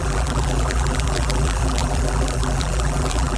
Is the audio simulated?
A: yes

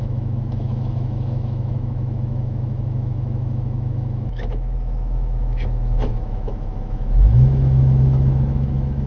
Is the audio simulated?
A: yes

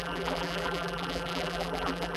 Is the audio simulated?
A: yes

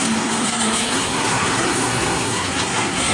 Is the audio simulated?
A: yes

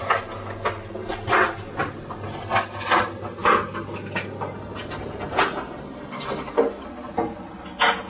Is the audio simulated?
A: no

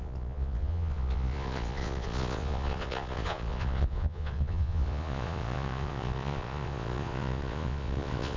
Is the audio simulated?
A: yes